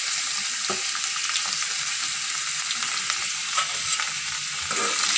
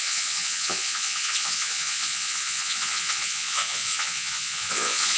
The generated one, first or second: second